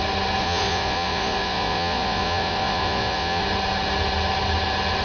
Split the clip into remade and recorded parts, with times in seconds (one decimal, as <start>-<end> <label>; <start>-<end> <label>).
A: 0.0-0.4 recorded; 0.4-3.4 remade; 3.4-5.0 recorded